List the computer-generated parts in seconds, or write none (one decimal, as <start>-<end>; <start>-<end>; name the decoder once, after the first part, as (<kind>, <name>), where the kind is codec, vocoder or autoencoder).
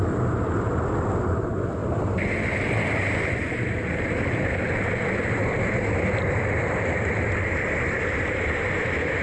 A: none